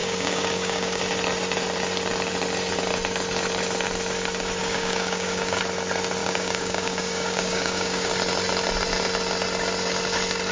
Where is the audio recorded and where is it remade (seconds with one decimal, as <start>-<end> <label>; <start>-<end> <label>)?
0.0-1.0 remade; 1.0-4.6 recorded; 4.6-5.6 remade; 5.6-6.2 recorded; 6.2-8.1 remade; 8.1-10.5 recorded